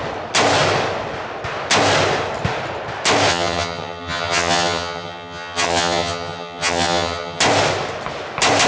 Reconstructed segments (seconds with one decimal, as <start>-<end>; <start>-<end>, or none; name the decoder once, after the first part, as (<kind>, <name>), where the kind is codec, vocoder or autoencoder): 3.3-7.4 (vocoder, HiFi-GAN)